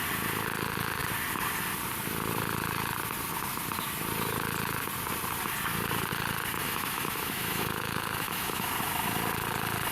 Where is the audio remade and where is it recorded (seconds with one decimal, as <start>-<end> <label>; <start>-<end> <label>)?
0.0-6.6 recorded; 6.6-8.7 remade; 8.7-9.9 recorded